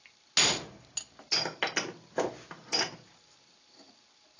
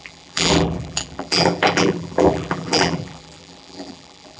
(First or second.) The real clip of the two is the first